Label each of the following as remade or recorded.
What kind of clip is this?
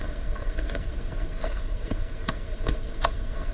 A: remade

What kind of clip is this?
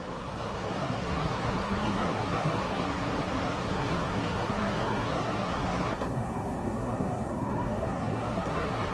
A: remade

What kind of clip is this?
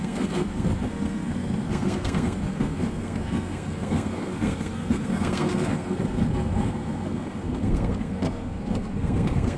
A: remade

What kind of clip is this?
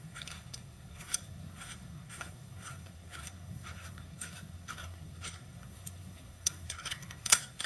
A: remade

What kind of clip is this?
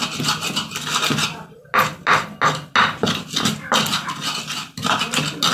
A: recorded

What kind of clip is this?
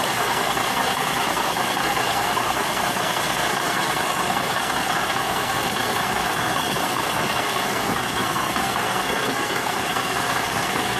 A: remade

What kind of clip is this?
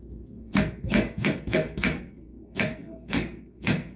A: remade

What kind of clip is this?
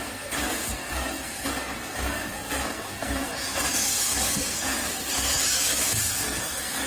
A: remade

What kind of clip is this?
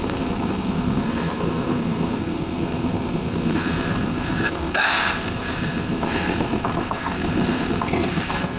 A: remade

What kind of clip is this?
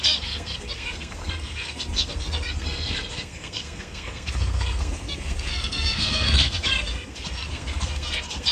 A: remade